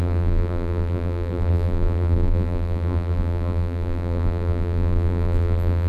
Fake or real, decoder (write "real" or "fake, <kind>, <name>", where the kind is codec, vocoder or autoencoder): fake, vocoder, BigVGAN v2